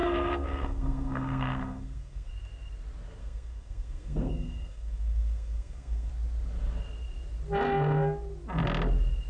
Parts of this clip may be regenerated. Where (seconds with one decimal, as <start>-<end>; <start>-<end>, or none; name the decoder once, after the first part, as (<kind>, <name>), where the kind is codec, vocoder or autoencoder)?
0.0-2.3 (codec, SNAC); 3.2-6.1